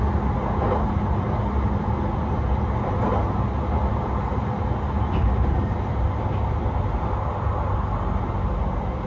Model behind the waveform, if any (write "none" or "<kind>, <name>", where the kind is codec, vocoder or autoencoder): none